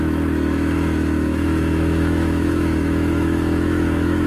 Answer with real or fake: fake